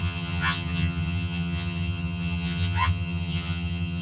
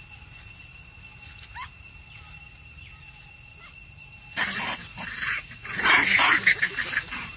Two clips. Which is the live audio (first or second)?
second